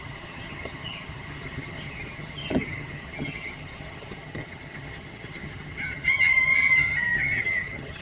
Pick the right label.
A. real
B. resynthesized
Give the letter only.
B